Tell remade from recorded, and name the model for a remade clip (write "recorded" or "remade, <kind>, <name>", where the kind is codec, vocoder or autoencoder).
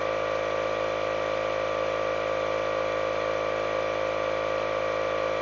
recorded